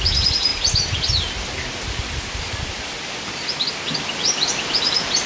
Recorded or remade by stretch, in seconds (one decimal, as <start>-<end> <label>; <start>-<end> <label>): 0.0-5.3 recorded